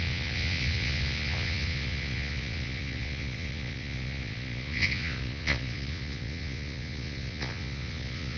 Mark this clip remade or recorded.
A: remade